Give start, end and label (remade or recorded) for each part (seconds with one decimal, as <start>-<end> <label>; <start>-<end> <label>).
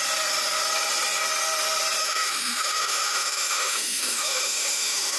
0.0-2.0 recorded; 2.0-5.2 remade